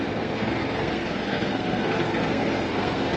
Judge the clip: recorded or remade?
remade